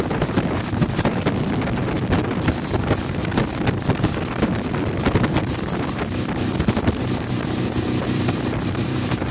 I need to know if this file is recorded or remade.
remade